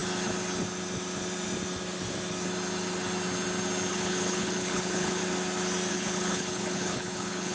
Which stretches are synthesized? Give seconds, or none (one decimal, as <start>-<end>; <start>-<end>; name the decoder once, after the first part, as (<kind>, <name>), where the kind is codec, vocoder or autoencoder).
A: 3.9-5.2 (codec, HILCodec); 5.9-7.5

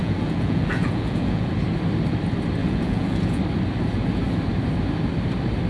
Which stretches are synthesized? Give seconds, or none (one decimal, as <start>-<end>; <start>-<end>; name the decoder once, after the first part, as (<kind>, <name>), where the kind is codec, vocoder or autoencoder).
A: 0.0-1.5 (vocoder, Vocos); 2.6-3.4

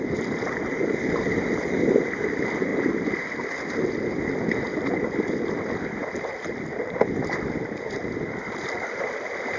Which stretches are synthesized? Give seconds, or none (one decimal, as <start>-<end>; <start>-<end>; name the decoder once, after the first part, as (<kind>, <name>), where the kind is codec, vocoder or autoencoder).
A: 0.0-2.7 (vocoder, BigVGAN v2); 4.3-9.6

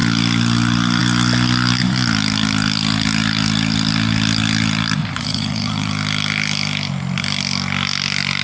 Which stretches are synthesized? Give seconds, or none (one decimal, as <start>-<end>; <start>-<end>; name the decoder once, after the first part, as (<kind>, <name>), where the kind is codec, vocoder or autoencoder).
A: 5.0-5.9 (vocoder, Vocos)

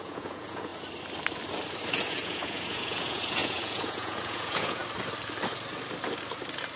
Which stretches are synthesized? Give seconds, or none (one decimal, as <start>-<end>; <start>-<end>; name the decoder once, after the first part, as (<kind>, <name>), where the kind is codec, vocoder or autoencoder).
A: 0.0-0.7 (vocoder, Vocos); 1.9-4.8

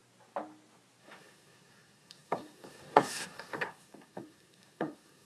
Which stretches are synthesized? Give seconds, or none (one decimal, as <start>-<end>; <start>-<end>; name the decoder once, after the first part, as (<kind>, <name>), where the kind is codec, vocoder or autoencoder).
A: 1.0-5.3 (codec, SNAC)